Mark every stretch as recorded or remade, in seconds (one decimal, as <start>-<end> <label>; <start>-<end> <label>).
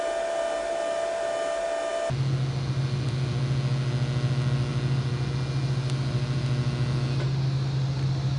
0.0-8.4 recorded